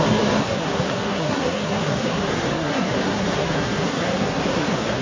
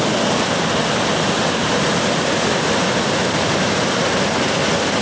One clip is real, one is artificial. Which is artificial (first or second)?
first